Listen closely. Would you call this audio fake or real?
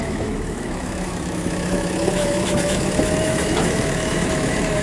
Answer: fake